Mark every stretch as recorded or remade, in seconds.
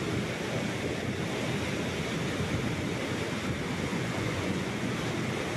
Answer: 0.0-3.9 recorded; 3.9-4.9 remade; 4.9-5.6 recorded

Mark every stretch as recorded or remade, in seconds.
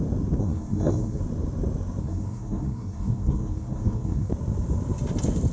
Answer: 0.0-0.4 recorded; 0.4-1.2 remade; 1.2-2.0 recorded; 2.0-4.3 remade; 4.3-5.5 recorded